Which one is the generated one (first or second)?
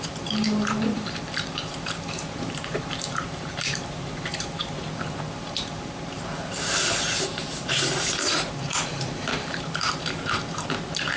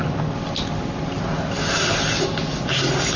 first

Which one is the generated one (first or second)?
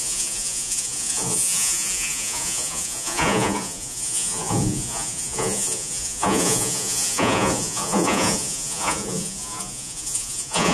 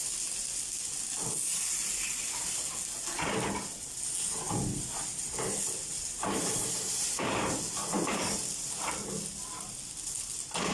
first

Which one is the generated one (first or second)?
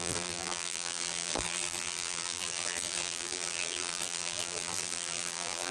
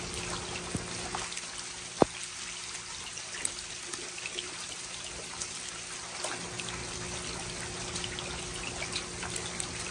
first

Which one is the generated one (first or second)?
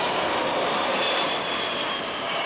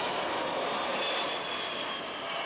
first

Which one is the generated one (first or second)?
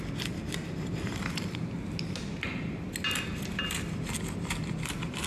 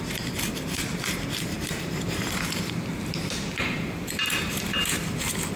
second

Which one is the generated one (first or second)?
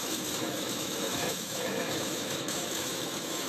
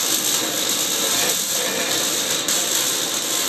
first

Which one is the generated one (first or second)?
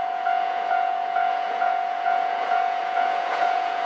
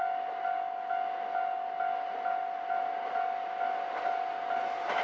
first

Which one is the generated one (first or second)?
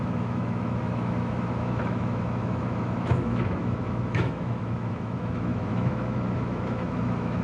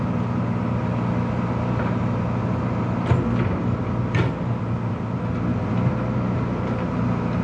first